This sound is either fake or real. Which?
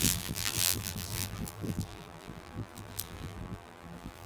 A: fake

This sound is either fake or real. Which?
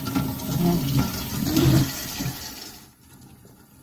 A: real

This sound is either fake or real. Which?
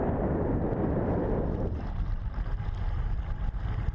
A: fake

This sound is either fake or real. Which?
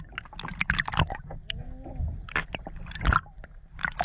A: real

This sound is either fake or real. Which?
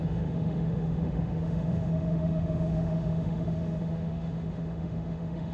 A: fake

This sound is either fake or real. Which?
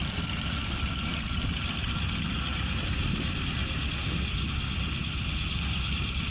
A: real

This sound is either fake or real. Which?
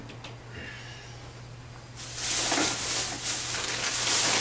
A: real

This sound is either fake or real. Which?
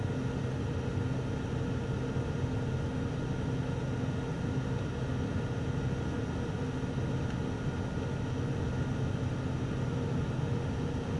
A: real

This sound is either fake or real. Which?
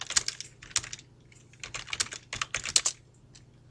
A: real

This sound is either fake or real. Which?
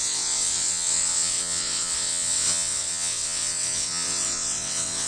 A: fake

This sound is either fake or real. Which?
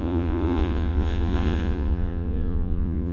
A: fake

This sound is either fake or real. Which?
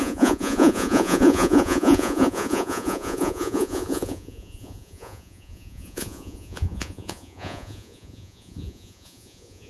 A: fake